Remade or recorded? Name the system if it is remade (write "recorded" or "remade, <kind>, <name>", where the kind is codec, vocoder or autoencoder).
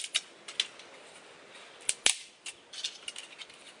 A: recorded